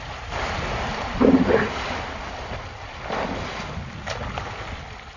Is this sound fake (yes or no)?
no